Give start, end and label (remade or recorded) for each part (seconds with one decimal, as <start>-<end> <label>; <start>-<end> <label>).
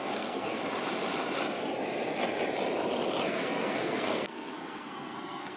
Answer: 0.0-0.6 remade; 0.6-3.3 recorded; 3.3-5.6 remade